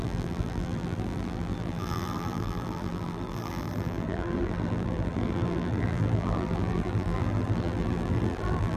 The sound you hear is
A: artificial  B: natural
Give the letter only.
A